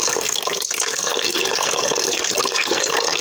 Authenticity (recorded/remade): remade